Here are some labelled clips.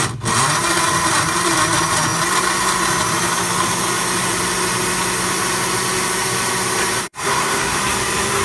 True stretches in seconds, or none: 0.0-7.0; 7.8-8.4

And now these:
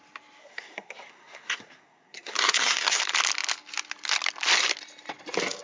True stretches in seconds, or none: 0.0-0.4; 3.0-5.6

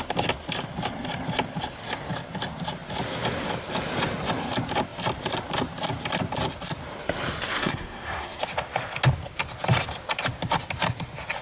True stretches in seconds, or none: 0.0-7.6; 8.4-11.4

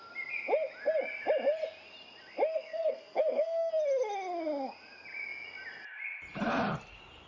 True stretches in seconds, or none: 0.0-2.5; 3.7-7.3